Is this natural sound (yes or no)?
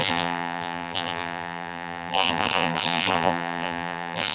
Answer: no